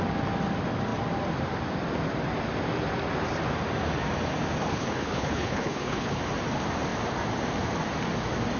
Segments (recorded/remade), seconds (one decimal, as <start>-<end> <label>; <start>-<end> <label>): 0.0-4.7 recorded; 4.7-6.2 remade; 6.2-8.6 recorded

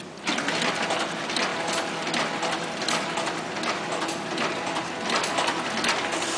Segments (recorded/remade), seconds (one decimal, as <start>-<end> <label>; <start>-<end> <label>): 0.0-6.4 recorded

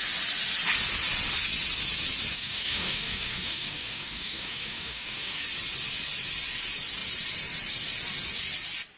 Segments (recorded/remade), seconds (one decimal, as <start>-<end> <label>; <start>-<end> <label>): 0.0-2.3 recorded; 2.3-5.4 remade; 5.4-9.0 recorded

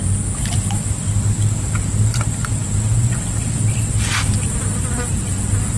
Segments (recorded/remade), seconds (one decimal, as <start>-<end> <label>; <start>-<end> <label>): 0.0-5.8 recorded

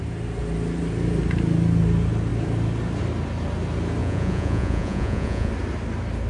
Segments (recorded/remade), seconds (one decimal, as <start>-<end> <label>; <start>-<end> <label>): 0.0-4.0 recorded; 4.0-5.5 remade; 5.5-6.3 recorded